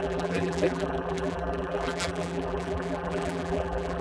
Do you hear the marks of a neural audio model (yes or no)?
yes